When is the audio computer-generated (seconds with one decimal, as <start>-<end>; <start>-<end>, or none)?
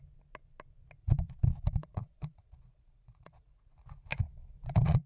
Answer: 1.0-3.6; 4.1-5.1